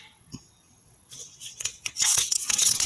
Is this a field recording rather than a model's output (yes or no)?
no